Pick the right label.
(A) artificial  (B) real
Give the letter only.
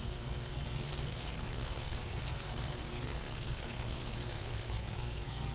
A